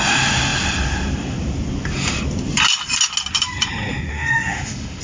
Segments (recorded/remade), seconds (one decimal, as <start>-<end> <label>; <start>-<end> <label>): 0.0-4.1 recorded; 4.1-5.0 remade